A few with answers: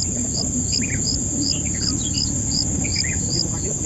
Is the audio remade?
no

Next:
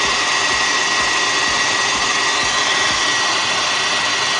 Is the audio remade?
no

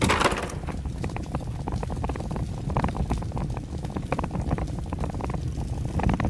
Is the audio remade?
no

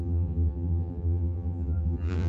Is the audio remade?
yes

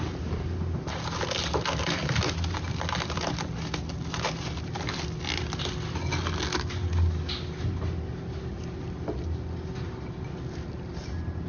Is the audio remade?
no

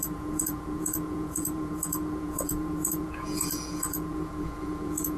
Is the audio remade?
yes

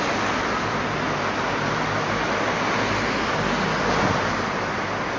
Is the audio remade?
no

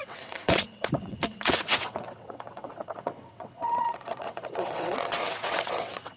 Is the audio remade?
yes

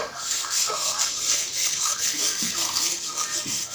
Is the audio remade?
yes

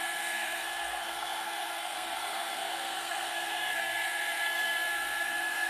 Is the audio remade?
yes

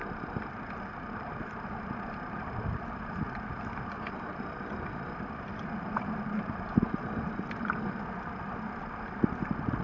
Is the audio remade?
no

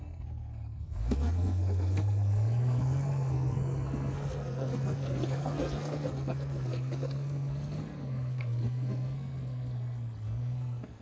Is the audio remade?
yes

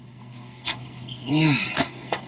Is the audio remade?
yes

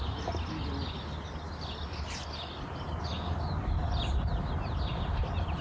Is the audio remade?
no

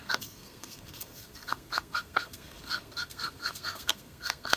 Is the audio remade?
yes